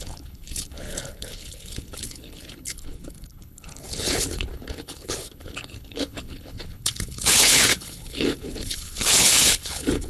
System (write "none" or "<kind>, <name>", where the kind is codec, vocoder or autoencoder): codec, HILCodec